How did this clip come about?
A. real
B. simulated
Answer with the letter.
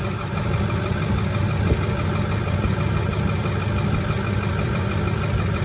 A